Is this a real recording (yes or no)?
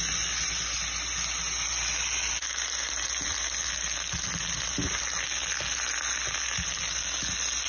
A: yes